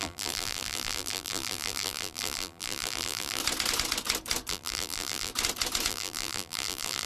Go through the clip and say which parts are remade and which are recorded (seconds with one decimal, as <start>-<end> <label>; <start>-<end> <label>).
0.0-3.4 remade; 3.4-4.5 recorded; 4.5-5.3 remade; 5.3-5.9 recorded; 5.9-7.1 remade